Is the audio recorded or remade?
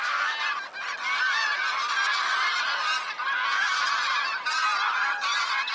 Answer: recorded